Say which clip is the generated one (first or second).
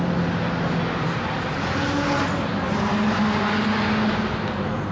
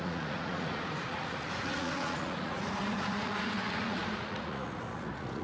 second